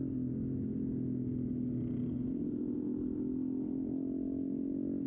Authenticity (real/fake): real